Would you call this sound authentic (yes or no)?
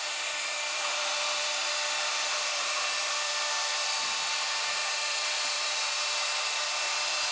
no